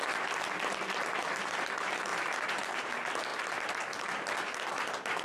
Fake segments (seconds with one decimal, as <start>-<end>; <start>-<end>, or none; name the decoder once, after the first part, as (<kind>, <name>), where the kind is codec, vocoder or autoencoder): 2.1-2.9 (vocoder, BigVGAN v2)